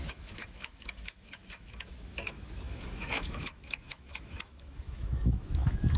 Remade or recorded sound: remade